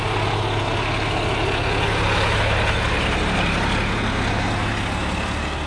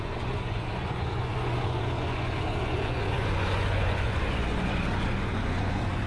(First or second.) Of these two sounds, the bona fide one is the first